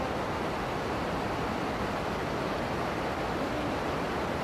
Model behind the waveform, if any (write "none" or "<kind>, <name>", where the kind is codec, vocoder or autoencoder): none